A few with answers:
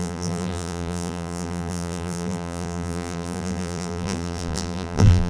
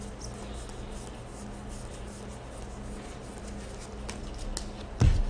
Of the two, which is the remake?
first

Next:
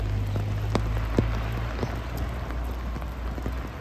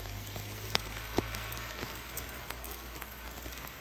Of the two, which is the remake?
second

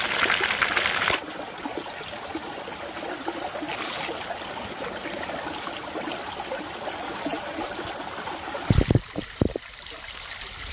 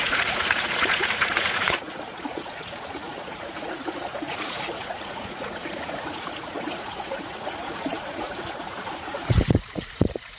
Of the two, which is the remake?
second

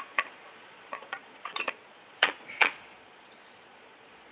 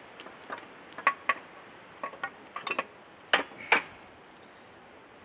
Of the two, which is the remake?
first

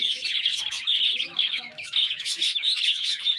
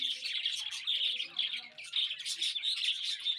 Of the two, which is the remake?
first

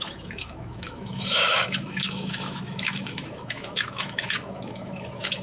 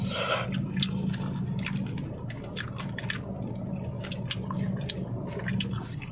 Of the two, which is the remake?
first